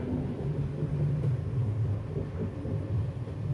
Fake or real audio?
real